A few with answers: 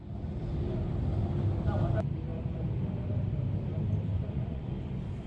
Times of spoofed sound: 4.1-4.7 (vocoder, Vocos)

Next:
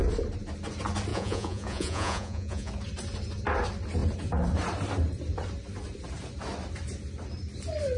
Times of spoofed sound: 1.1-2.7 (vocoder, Vocos)

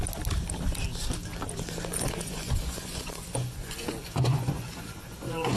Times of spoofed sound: 1.9-5.6 (vocoder, Vocos)

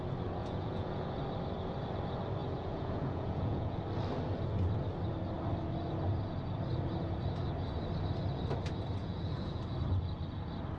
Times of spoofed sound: 0.4-1.1 (vocoder, Vocos); 2.4-3.8; 9.0-9.6

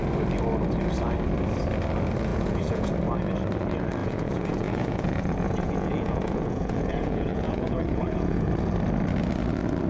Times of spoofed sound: 2.3-2.9 (vocoder, Vocos); 4.0-8.5

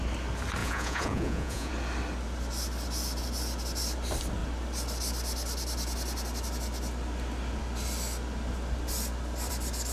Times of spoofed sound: 0.6-1.7 (vocoder, Vocos)

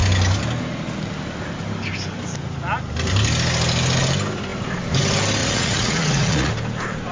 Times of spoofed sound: 5.4-6.5 (vocoder, Vocos)

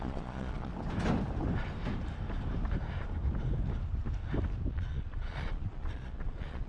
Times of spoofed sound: 0.0-0.7 (vocoder, Vocos); 4.7-6.7